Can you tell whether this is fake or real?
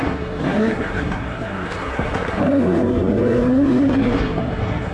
fake